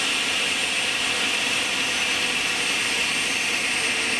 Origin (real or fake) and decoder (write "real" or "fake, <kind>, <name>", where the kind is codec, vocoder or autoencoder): real